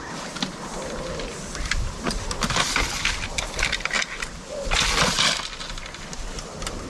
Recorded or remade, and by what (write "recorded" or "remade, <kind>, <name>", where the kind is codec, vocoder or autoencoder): recorded